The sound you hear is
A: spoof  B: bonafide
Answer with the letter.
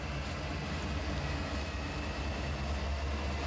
B